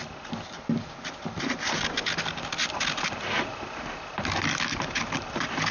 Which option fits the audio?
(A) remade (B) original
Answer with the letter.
B